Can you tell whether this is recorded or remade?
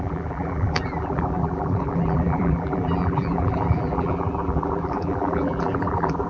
remade